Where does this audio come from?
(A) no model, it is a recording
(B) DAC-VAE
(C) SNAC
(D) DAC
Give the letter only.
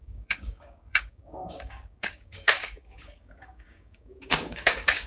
D